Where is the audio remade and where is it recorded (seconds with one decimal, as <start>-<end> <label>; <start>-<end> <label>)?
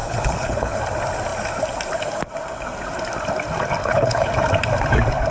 0.0-0.8 remade; 0.8-3.8 recorded; 3.8-4.3 remade; 4.3-5.3 recorded